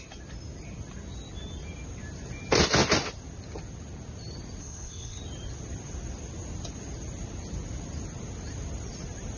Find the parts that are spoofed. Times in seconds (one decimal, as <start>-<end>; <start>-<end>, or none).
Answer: 4.6-5.2